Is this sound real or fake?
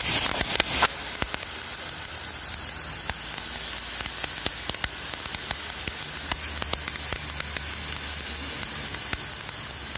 real